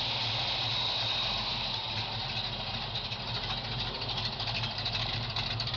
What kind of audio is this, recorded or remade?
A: recorded